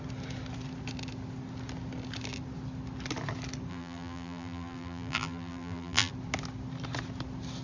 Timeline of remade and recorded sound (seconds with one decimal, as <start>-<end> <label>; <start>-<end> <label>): 0.0-3.7 recorded; 3.7-6.1 remade; 6.1-7.6 recorded